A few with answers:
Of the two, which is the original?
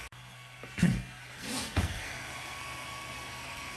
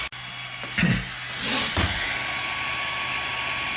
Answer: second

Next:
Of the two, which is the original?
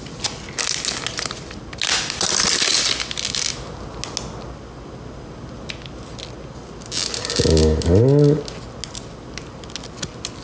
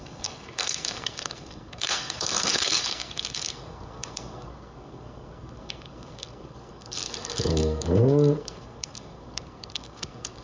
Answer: first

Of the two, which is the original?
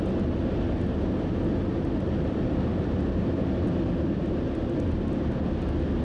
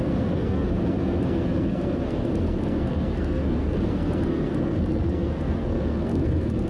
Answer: first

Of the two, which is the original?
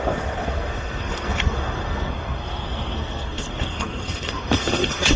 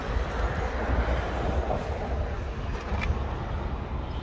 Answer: second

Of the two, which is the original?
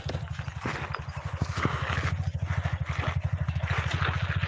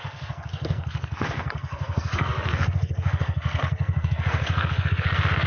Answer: first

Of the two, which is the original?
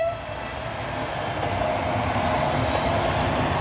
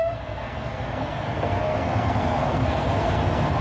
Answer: first